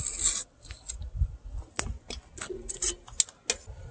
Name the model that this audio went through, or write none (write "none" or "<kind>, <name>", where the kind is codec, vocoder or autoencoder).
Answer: none